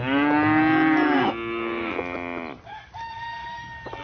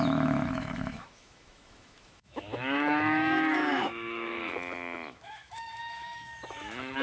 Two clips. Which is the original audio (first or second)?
first